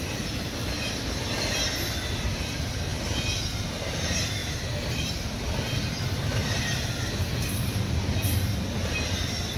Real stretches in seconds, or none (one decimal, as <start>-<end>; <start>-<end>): 0.0-9.6